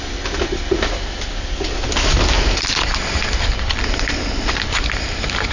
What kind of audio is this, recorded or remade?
recorded